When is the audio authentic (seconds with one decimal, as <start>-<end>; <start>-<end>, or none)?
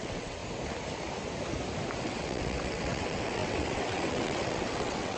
0.4-2.0